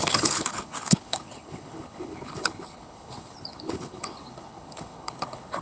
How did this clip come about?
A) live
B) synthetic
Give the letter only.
B